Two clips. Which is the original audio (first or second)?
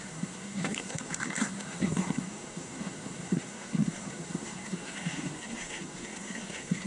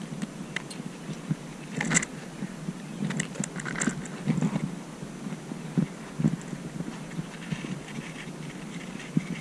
second